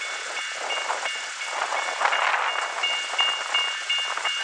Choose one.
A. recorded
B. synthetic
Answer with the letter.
A